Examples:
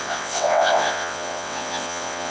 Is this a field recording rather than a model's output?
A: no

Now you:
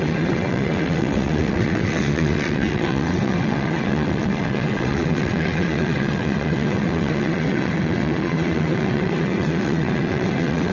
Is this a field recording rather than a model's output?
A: no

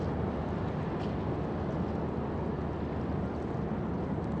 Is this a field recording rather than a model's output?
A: yes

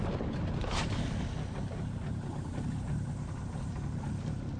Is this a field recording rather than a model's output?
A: yes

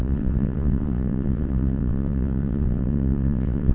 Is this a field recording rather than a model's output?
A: no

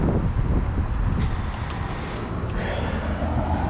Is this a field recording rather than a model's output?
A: yes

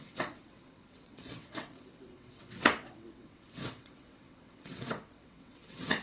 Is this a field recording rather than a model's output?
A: no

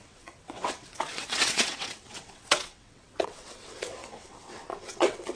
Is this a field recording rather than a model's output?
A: no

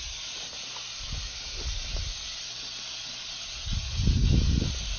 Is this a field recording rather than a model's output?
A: yes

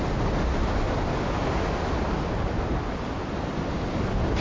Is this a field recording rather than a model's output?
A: yes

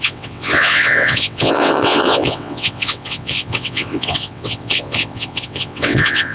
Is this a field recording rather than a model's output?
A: no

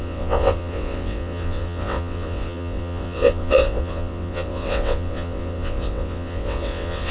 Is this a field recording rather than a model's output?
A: no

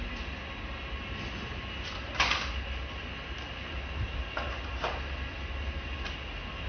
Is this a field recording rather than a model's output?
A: yes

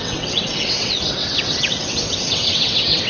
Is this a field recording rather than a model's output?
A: no